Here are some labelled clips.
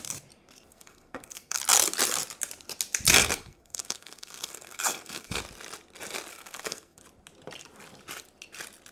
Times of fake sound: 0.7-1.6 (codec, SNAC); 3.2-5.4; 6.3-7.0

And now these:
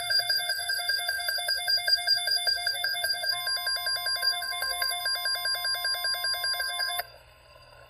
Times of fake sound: 0.0-3.4 (codec, SNAC); 4.2-5.0; 6.6-7.9